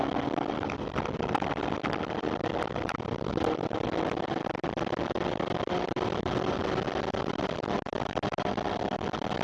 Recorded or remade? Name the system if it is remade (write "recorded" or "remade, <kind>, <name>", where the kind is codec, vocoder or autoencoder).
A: recorded